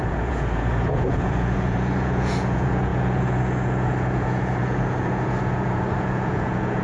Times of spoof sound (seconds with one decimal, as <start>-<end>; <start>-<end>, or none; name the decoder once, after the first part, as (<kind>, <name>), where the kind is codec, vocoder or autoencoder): 0.0-6.8 (vocoder, Vocos)